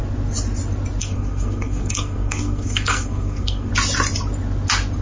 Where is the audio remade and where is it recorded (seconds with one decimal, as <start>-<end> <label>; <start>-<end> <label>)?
0.0-1.0 recorded; 1.0-3.7 remade; 3.7-5.0 recorded